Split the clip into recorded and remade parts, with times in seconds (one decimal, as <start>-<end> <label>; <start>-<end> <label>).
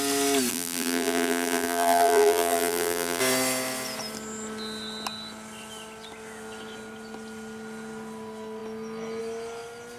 0.0-0.5 recorded; 0.5-3.2 remade; 3.2-10.0 recorded